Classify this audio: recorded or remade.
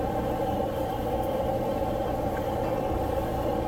remade